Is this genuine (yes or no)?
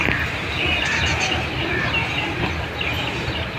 yes